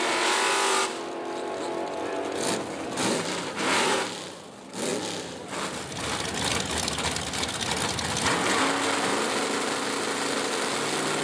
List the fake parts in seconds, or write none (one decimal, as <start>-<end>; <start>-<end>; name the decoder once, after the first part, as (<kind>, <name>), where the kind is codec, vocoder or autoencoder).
none